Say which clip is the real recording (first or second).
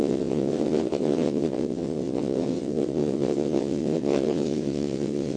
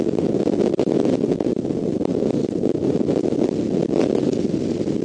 second